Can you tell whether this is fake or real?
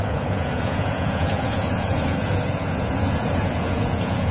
fake